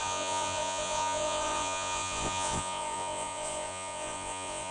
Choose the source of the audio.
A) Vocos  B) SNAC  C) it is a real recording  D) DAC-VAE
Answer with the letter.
A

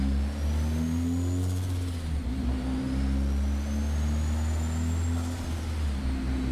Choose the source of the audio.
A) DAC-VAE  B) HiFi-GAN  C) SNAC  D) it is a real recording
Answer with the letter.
D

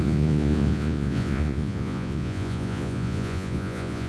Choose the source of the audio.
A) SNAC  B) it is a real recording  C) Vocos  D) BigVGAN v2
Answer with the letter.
C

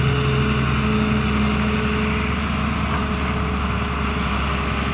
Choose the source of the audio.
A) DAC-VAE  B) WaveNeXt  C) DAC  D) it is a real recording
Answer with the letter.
D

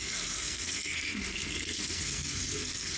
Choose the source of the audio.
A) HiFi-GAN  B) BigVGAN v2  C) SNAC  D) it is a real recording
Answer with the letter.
C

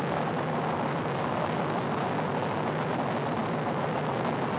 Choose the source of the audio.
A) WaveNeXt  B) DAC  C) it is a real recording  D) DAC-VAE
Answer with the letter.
C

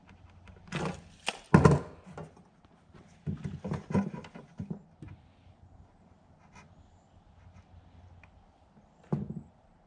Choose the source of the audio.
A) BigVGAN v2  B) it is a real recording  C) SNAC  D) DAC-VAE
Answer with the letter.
B